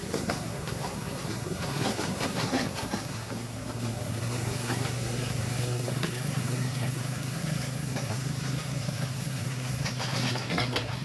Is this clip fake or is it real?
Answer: fake